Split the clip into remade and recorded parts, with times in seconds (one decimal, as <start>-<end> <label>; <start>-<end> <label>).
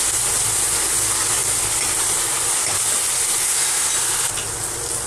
0.0-3.4 recorded; 3.4-3.9 remade; 3.9-5.1 recorded